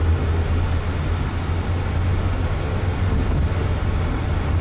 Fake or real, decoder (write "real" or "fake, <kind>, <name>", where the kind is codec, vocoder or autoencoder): real